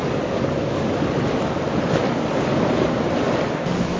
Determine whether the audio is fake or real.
real